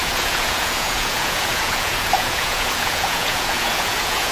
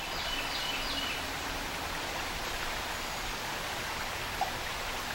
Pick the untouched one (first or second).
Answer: second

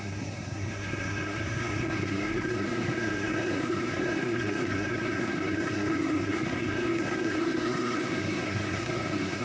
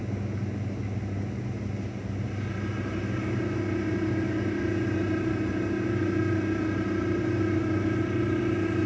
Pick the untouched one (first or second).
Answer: second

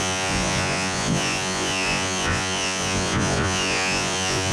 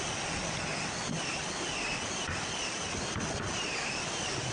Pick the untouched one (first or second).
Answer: second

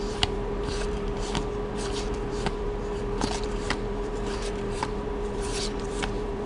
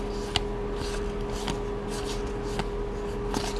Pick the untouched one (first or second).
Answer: second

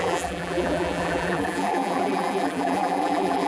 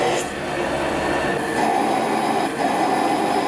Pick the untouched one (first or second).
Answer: second